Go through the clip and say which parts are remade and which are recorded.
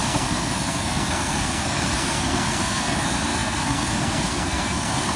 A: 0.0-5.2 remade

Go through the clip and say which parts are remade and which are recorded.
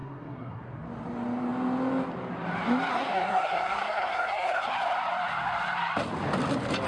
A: 0.0-0.6 remade; 0.6-2.9 recorded; 2.9-4.7 remade; 4.7-6.9 recorded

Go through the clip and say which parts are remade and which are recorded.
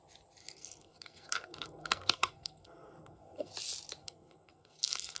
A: 0.0-0.4 recorded; 0.4-3.5 remade; 3.5-4.0 recorded; 4.0-5.2 remade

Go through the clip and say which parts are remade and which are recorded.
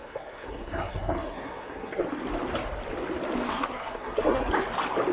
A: 0.0-2.0 remade; 2.0-3.5 recorded; 3.5-4.5 remade; 4.5-5.1 recorded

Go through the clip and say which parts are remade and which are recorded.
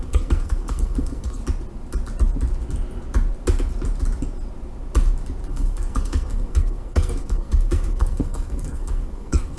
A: 0.0-1.4 remade; 1.4-5.5 recorded; 5.5-9.6 remade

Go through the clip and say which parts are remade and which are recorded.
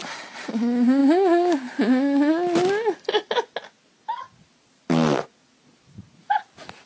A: 0.0-6.9 recorded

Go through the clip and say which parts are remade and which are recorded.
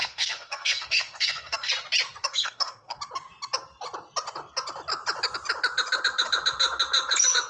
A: 0.0-1.7 remade; 1.7-2.2 recorded; 2.2-3.0 remade; 3.0-7.5 recorded